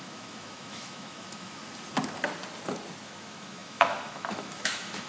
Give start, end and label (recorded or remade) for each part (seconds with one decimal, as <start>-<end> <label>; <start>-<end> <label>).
0.0-1.6 remade; 1.6-3.0 recorded; 3.0-5.1 remade